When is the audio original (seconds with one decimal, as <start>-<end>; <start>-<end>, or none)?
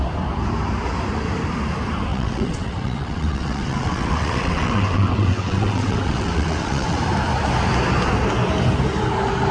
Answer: 0.0-2.1; 7.0-9.5